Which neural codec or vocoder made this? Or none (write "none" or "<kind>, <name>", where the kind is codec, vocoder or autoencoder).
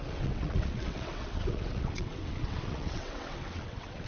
vocoder, WaveNeXt